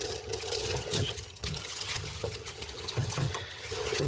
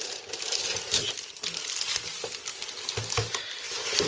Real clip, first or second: second